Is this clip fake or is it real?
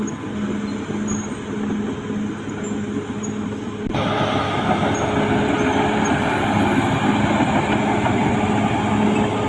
real